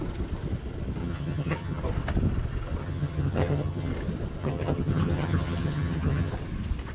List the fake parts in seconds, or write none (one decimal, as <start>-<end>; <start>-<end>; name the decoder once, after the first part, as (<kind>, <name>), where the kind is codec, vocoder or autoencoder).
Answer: 1.0-1.8 (vocoder, HiFi-GAN); 2.8-3.9; 4.4-6.3

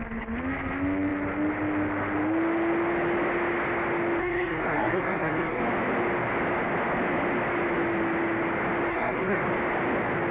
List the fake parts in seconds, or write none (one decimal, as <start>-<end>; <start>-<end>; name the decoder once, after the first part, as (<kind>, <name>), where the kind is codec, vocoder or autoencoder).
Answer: 4.2-5.6 (codec, SNAC); 8.9-9.4

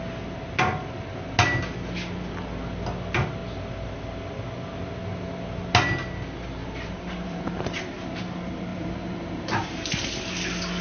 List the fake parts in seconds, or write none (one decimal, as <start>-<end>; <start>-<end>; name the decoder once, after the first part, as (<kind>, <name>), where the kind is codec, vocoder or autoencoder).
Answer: 6.6-7.8 (vocoder, BigVGAN v2); 8.7-9.8

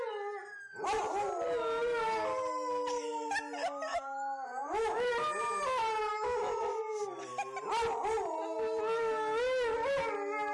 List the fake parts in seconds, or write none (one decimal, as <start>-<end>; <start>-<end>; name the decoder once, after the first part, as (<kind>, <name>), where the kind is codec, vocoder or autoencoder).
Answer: 3.9-5.1 (autoencoder, DAC-VAE); 6.1-6.7

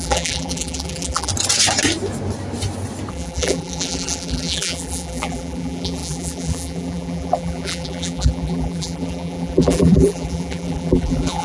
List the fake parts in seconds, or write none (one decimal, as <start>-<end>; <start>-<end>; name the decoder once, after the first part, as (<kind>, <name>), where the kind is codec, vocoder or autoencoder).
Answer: 0.0-1.3 (vocoder, BigVGAN v2); 3.1-11.4

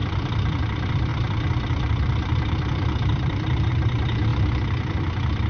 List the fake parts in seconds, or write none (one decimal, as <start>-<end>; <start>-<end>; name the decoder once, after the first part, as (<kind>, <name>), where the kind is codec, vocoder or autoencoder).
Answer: 0.0-0.6 (vocoder, BigVGAN v2); 1.1-3.7